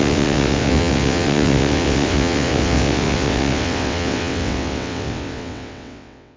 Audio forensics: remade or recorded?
remade